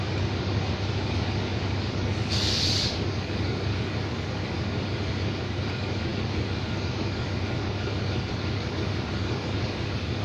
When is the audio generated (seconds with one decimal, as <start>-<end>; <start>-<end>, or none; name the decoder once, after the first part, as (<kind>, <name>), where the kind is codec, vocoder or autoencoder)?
0.0-10.2 (codec, DAC)